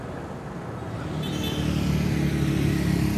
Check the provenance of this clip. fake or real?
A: real